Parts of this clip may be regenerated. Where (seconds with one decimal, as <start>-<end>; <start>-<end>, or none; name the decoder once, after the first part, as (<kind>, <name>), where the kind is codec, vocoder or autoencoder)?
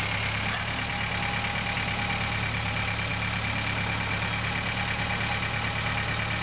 none